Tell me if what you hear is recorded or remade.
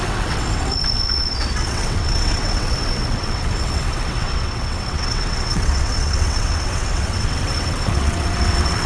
remade